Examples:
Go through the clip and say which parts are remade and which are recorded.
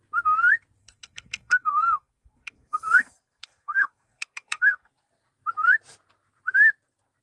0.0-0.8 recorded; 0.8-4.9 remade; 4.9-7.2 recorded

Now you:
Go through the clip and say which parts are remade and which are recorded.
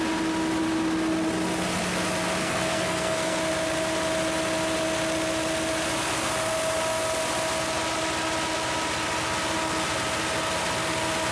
0.0-2.4 recorded; 2.4-3.4 remade; 3.4-11.3 recorded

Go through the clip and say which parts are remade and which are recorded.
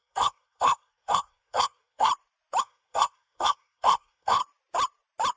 0.0-2.1 remade; 2.1-2.6 recorded; 2.6-4.4 remade; 4.4-5.4 recorded